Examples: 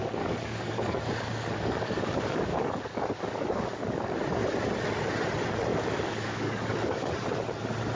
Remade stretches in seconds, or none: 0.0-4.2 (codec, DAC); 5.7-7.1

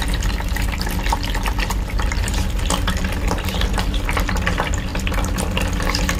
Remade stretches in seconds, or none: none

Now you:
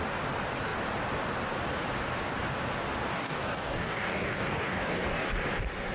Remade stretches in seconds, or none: 3.1-5.3 (codec, DAC)

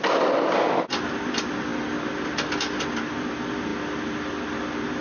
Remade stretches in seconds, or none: none

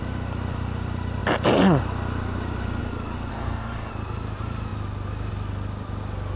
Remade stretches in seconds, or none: 3.3-3.9 (codec, DAC)

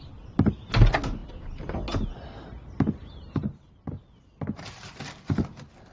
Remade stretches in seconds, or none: none

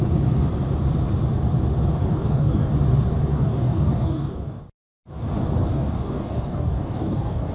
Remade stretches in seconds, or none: 2.0-2.7 (codec, DAC); 3.3-4.6; 5.7-7.5